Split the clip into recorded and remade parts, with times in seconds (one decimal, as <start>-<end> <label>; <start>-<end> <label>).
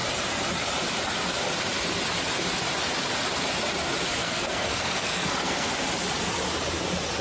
0.0-4.2 recorded; 4.2-5.7 remade; 5.7-7.2 recorded